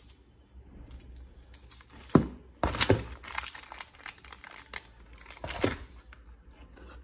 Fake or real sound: real